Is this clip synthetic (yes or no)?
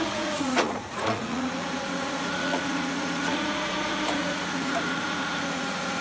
yes